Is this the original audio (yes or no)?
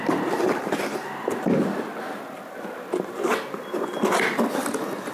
yes